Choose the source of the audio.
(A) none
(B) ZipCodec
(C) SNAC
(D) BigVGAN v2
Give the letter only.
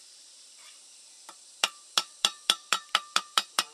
D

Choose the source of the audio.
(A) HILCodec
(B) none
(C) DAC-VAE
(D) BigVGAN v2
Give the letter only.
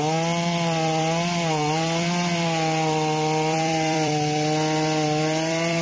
D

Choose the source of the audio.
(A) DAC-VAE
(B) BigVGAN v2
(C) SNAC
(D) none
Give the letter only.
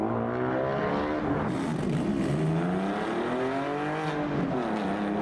D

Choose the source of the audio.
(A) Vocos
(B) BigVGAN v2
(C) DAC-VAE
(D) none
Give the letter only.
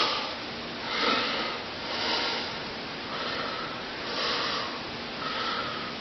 D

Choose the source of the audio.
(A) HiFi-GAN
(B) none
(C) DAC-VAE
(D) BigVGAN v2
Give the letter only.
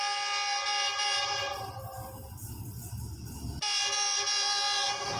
B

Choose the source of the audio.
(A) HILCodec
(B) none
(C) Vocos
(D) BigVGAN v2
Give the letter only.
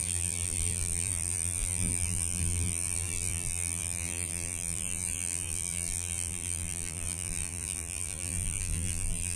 D